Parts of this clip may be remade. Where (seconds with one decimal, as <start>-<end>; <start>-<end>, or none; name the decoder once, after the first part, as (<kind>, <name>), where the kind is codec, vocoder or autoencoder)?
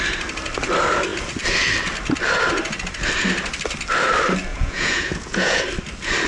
4.5-5.6 (vocoder, Vocos)